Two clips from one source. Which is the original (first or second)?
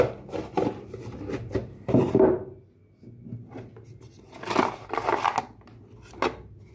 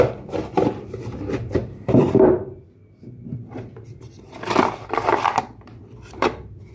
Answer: first